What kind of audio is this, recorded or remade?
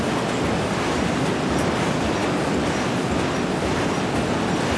recorded